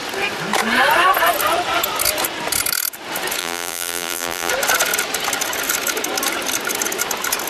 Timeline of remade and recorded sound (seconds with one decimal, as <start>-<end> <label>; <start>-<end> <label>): 0.0-3.4 recorded; 3.4-4.5 remade; 4.5-7.5 recorded